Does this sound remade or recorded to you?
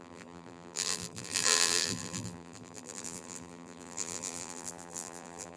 remade